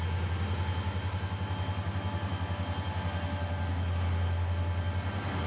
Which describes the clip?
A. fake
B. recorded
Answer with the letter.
B